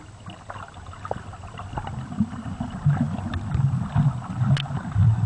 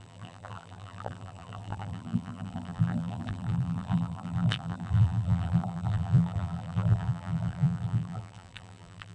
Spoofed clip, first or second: second